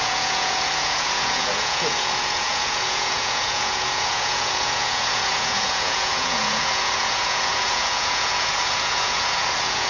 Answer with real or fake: fake